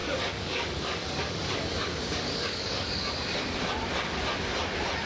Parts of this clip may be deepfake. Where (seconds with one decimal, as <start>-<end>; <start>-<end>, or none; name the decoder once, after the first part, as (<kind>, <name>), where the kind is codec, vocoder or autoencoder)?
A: 0.0-3.1 (codec, DAC)